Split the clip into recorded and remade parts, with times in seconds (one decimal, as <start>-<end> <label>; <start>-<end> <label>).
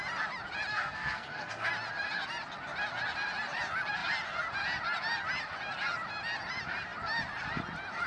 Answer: 0.0-0.7 recorded; 0.7-1.7 remade; 1.7-8.1 recorded